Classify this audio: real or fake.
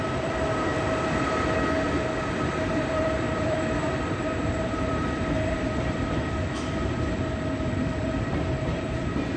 fake